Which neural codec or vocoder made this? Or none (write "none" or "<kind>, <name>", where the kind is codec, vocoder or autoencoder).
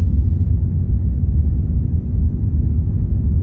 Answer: none